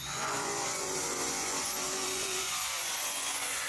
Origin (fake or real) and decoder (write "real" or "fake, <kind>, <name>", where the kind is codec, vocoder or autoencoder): fake, vocoder, Vocos